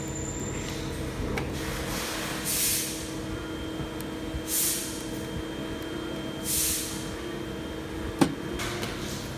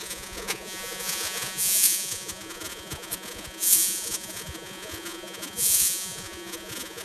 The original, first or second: first